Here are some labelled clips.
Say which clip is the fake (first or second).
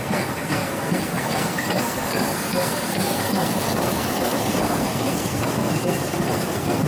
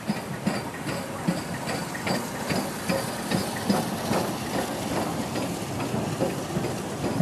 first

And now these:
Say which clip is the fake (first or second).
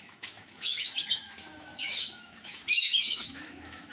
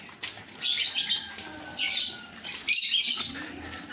first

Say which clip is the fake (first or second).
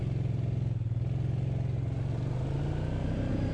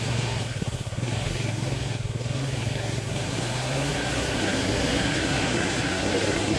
second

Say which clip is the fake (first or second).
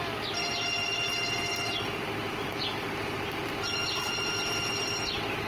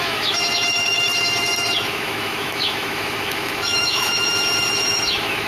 second